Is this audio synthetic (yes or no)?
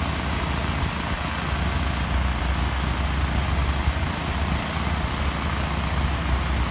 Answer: no